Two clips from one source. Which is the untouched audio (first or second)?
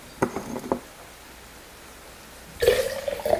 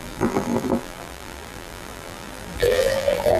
first